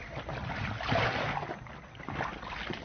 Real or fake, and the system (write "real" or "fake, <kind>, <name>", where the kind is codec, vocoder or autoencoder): real